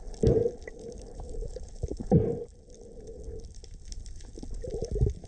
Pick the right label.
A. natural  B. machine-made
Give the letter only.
A